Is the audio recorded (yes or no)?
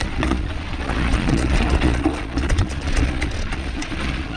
no